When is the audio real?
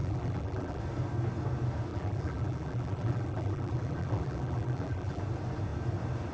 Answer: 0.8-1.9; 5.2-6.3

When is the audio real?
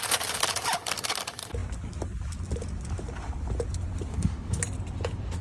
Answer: 0.0-4.1; 4.6-5.4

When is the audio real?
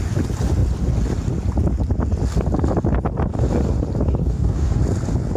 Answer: 0.0-4.2; 4.8-5.4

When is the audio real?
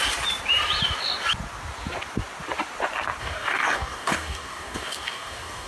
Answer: 0.0-3.2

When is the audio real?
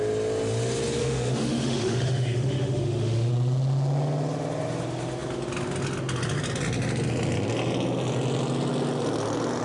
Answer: 0.0-1.0; 3.3-9.6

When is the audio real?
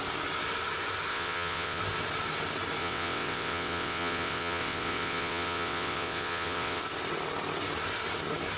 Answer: 0.0-1.1; 1.8-2.8; 6.8-8.6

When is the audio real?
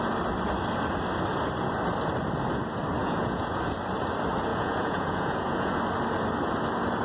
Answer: 0.0-3.0; 3.6-4.5; 5.8-7.0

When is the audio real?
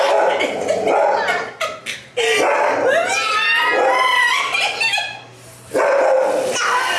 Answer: 0.0-7.0